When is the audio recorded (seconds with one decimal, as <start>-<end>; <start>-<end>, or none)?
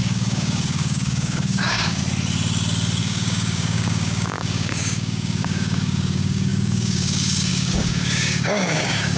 2.0-3.0